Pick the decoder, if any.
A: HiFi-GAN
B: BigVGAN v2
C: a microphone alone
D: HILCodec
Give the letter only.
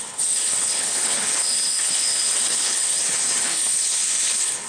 D